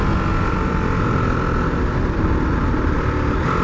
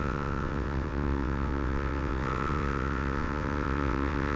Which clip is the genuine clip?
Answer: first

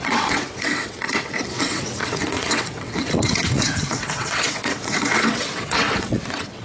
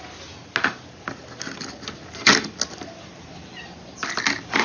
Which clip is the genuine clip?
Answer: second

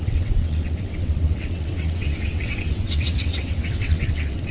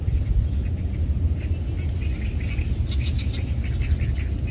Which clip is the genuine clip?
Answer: second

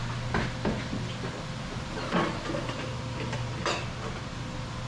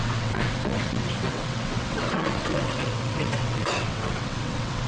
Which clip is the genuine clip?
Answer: first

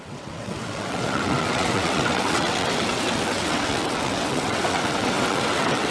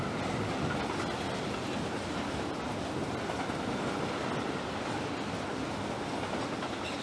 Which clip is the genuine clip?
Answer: second